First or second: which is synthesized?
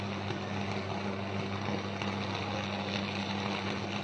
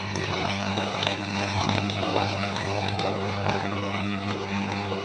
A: second